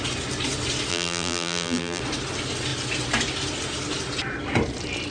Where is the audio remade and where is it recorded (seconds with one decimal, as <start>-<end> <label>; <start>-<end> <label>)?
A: 0.0-0.9 recorded; 0.9-2.0 remade; 2.0-5.1 recorded